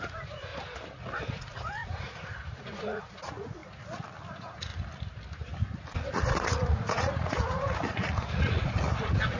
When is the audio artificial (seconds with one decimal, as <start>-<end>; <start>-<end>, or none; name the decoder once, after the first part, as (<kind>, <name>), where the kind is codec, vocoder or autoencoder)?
0.0-0.5 (vocoder, Vocos); 1.3-3.6; 4.3-4.7; 6.0-9.4